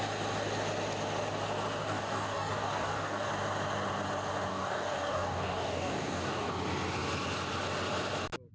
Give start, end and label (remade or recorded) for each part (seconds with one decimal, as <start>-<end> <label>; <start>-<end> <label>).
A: 0.0-1.8 recorded; 1.8-3.3 remade; 3.3-4.5 recorded; 4.5-6.5 remade; 6.5-8.5 recorded